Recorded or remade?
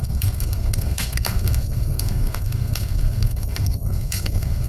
remade